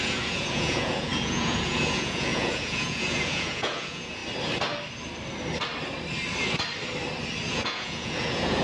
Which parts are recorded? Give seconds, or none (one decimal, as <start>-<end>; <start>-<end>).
4.2-7.5